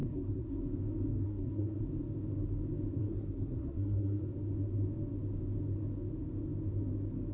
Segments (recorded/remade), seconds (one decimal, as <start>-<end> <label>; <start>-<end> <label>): 0.0-0.6 remade; 0.6-1.1 recorded; 1.1-1.8 remade; 1.8-3.0 recorded; 3.0-4.2 remade; 4.2-7.3 recorded